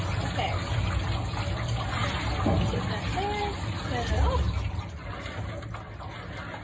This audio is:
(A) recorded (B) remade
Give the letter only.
A